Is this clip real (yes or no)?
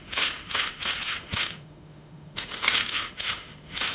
no